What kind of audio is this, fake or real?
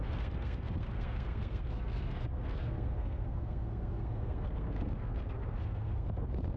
fake